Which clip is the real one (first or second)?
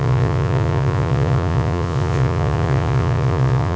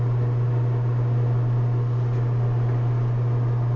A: second